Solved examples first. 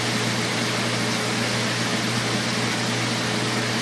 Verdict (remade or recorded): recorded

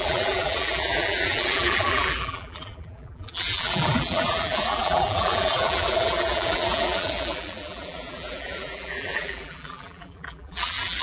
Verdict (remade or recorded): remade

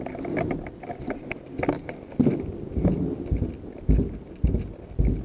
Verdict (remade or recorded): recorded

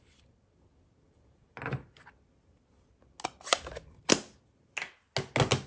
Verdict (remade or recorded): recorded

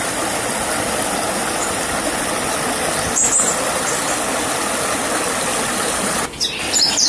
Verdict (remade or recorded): recorded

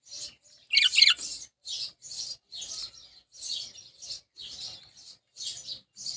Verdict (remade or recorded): recorded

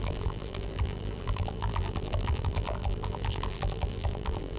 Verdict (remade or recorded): remade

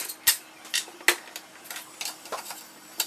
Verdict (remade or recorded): recorded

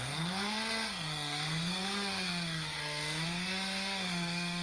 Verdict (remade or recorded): remade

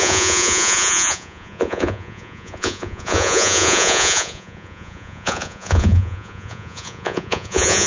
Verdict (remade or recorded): remade